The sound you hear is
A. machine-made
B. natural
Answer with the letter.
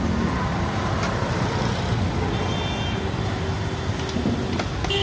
B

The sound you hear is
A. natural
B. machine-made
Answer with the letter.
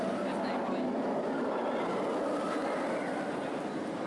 A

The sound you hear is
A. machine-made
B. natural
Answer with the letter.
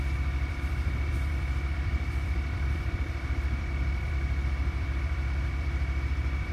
A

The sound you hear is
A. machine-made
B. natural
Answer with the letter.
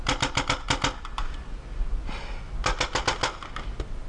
B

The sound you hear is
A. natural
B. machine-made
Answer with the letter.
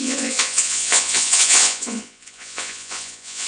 B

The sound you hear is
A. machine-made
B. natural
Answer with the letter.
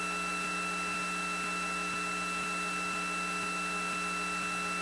B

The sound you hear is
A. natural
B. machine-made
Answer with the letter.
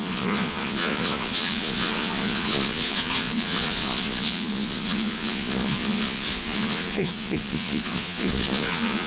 B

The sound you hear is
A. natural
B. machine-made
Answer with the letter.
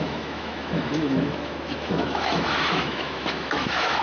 B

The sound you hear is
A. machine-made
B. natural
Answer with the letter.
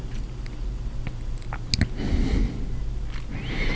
B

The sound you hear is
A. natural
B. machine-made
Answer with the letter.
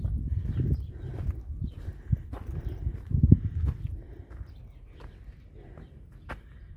B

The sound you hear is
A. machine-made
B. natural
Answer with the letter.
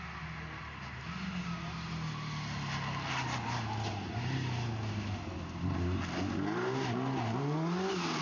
B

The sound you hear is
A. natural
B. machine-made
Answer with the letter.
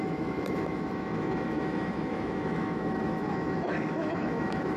B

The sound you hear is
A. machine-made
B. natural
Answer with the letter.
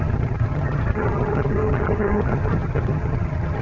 A